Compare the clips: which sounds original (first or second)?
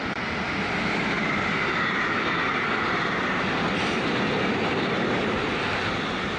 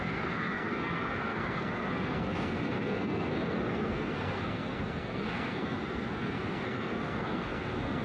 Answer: first